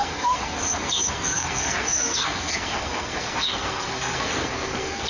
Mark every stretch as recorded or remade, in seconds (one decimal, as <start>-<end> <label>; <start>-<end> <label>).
0.0-5.1 remade